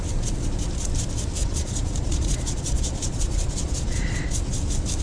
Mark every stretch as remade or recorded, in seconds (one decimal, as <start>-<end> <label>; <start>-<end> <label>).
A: 0.0-1.4 recorded; 1.4-4.4 remade; 4.4-5.0 recorded